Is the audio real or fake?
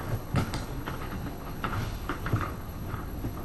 fake